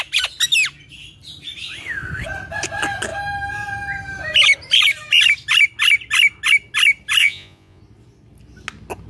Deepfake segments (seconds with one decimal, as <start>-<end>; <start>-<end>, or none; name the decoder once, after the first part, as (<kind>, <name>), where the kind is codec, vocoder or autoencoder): 7.2-7.8 (vocoder, Vocos)